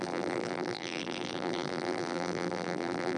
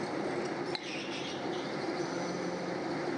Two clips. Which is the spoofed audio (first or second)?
first